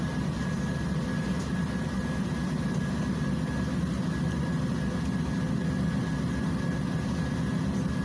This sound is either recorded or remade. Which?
recorded